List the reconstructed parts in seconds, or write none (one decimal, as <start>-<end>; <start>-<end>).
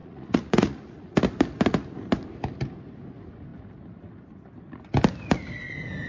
0.0-1.2